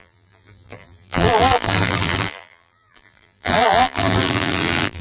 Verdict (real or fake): fake